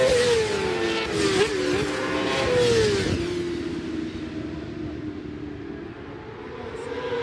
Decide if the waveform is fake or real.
real